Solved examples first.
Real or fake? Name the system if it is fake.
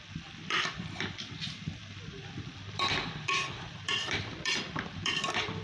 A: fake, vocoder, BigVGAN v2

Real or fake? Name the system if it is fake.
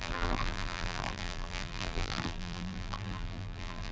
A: fake, vocoder, BigVGAN v2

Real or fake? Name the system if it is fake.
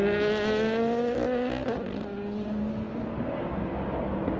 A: real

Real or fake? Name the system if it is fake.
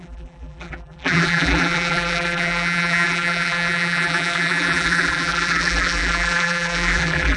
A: fake, vocoder, BigVGAN v2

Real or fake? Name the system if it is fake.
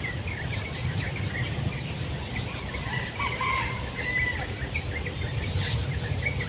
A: real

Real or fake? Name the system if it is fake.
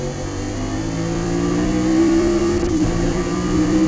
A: fake, vocoder, BigVGAN v2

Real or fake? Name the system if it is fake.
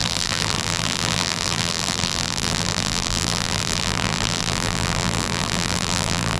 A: fake, vocoder, BigVGAN v2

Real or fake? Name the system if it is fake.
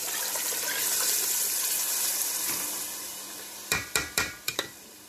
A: fake, vocoder, BigVGAN v2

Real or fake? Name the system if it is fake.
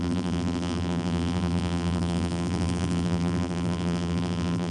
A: fake, vocoder, BigVGAN v2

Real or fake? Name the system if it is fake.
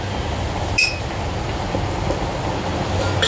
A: real